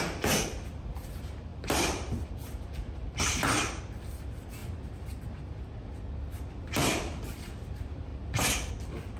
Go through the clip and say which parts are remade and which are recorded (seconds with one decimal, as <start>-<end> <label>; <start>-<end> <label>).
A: 0.0-4.6 remade; 4.6-6.5 recorded; 6.5-9.2 remade